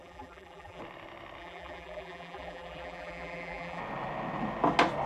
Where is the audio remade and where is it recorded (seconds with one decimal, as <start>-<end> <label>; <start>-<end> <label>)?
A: 0.0-0.8 remade; 0.8-1.4 recorded; 1.4-3.8 remade; 3.8-5.1 recorded